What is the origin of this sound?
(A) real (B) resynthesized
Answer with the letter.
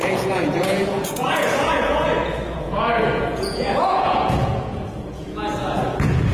B